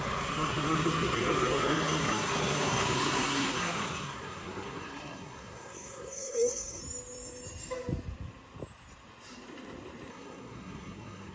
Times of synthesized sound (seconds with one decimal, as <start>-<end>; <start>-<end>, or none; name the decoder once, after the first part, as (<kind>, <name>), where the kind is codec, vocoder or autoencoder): 0.0-6.8 (codec, SNAC); 10.1-11.3